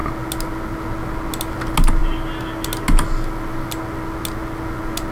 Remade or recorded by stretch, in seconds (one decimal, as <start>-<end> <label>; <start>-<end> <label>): 0.0-5.1 recorded